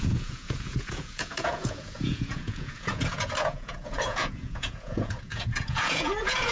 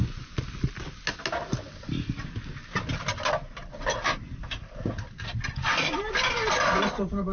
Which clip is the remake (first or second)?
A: first